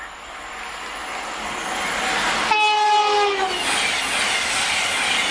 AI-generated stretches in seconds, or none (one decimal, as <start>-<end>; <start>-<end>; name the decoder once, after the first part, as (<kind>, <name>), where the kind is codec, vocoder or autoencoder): none